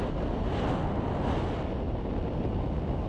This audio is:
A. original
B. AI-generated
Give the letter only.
A